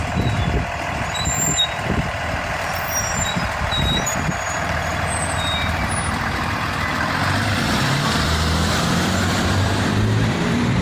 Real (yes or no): no